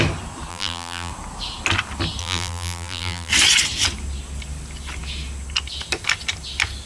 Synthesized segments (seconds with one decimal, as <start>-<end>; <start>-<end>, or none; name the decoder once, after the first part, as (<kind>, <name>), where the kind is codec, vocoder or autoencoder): 0.5-1.1 (vocoder, BigVGAN v2); 2.2-3.3